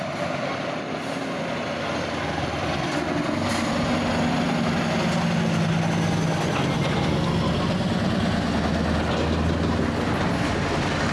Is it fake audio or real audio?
real